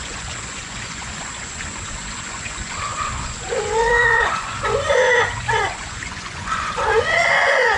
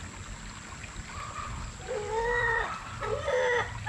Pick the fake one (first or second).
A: first